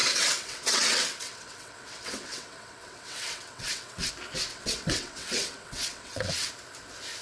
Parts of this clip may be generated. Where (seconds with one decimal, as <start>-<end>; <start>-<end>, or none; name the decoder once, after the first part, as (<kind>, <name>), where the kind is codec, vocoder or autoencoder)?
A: 0.0-4.1 (vocoder, WaveNeXt); 4.5-6.5